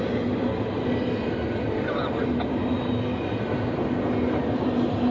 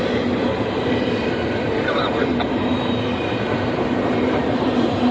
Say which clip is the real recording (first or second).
first